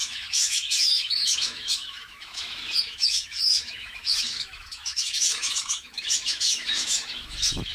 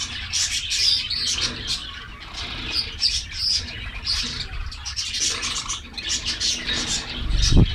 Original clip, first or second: second